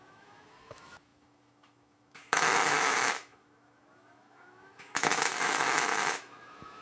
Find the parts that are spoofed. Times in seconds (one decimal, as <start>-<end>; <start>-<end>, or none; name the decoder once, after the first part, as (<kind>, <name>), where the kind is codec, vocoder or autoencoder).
0.0-6.8 (autoencoder, DAC-VAE)